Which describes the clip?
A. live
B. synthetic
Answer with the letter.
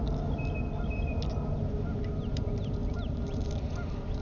A